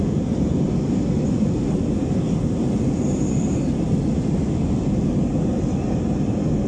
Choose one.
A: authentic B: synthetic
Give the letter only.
A